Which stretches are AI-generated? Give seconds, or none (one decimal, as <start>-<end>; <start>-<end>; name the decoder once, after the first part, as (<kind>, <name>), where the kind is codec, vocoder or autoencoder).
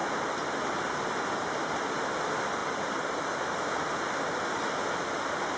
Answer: none